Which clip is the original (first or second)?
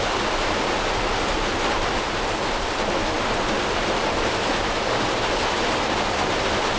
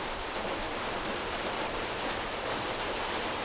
first